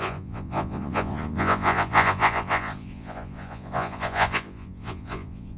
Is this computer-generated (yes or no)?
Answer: yes